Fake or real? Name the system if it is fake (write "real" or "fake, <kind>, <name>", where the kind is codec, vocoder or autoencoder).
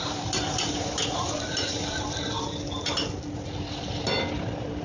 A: real